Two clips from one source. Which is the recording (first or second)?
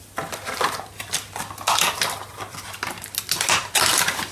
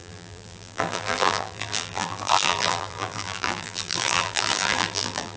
first